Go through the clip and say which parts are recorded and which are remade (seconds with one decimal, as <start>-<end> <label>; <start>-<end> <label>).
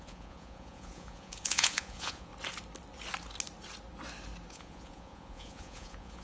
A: 0.0-2.3 remade; 2.3-4.5 recorded; 4.5-6.2 remade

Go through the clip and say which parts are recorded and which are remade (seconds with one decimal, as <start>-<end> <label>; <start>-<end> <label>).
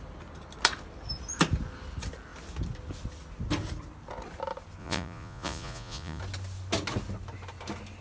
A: 0.0-4.8 recorded; 4.8-6.2 remade; 6.2-8.0 recorded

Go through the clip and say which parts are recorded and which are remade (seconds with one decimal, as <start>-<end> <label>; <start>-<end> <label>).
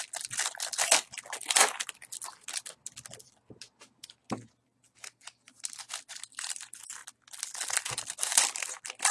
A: 0.0-9.1 recorded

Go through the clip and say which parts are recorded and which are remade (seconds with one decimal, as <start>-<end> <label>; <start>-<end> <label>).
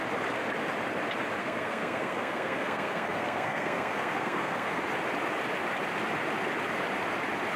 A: 0.0-1.4 recorded; 1.4-4.8 remade; 4.8-7.6 recorded